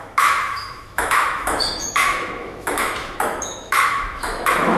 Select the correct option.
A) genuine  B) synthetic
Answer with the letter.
B